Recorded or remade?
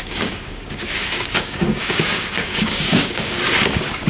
remade